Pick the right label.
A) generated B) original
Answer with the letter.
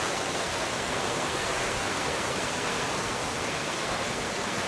A